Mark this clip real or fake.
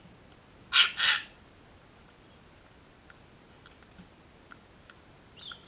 real